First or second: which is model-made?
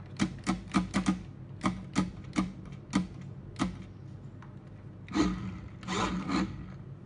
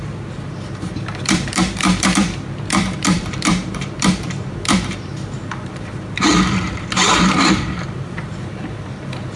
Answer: second